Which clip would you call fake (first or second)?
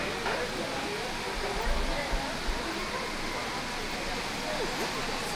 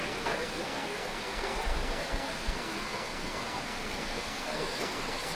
second